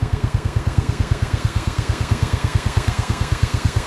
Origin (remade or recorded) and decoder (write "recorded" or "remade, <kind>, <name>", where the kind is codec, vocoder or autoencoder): remade, codec, SNAC